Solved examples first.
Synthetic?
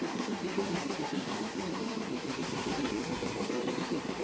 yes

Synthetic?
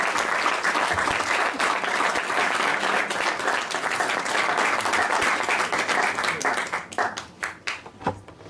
no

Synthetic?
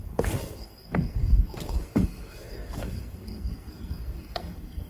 yes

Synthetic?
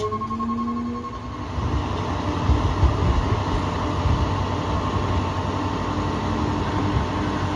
no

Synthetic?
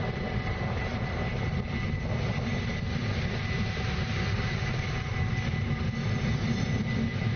no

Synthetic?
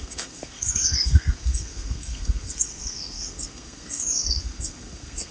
yes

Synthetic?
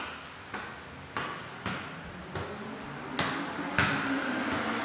no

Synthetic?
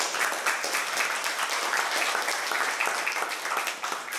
no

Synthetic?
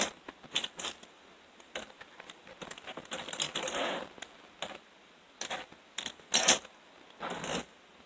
no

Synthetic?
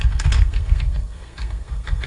yes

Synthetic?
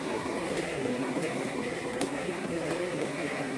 yes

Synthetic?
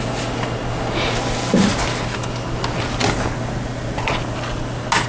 no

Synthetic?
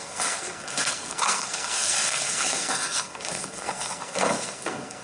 yes